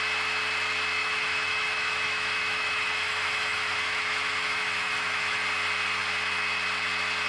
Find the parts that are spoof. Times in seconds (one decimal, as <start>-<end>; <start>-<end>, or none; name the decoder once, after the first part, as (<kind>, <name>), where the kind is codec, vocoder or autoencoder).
1.0-5.4 (autoencoder, DAC-VAE)